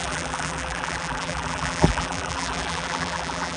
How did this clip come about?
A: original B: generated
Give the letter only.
B